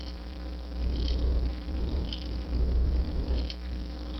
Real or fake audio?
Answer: fake